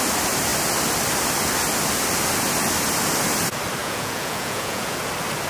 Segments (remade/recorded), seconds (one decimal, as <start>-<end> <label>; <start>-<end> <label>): 0.0-3.8 recorded; 3.8-5.0 remade; 5.0-5.5 recorded